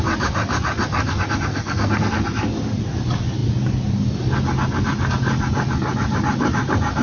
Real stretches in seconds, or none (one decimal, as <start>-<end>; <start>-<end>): 0.0-1.5; 2.1-7.0